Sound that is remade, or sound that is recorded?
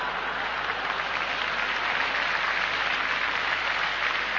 recorded